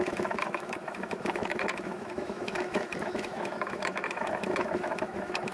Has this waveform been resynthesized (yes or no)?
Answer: yes